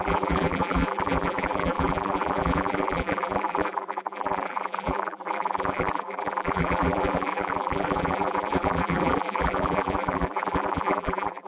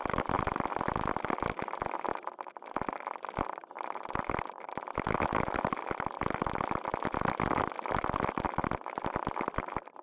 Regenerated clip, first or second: first